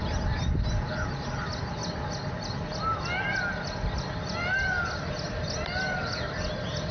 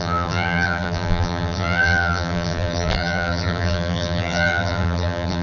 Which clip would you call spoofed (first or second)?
second